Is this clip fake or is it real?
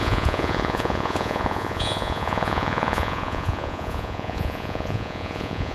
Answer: fake